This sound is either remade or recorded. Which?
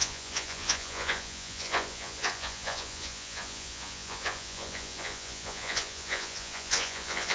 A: remade